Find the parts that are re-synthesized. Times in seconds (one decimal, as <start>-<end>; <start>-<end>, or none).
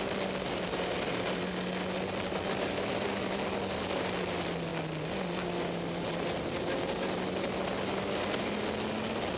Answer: none